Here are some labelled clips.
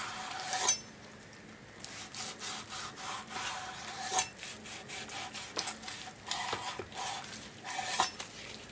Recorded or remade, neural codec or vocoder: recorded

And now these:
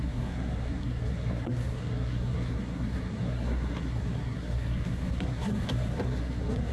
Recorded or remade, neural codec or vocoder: remade, codec, SNAC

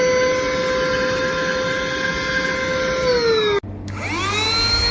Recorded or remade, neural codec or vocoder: recorded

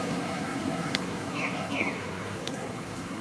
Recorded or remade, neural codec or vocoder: remade, codec, SNAC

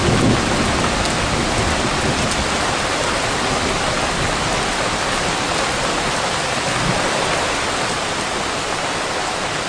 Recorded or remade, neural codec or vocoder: recorded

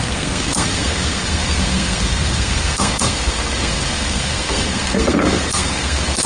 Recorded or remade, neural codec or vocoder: remade, codec, SNAC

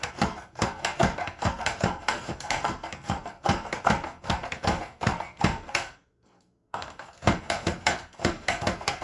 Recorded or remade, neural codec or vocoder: remade, codec, SNAC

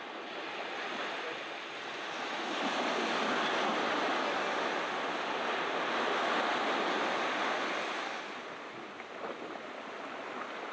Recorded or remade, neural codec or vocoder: recorded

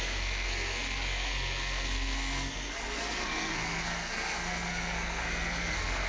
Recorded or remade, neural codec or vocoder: remade, codec, SNAC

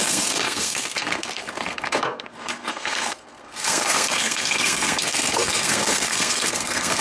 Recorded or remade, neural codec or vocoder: remade, codec, SNAC